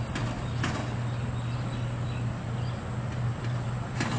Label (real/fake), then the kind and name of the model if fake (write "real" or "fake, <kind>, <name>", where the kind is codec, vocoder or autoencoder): real